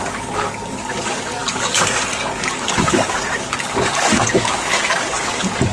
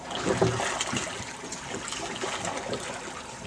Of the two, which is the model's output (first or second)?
first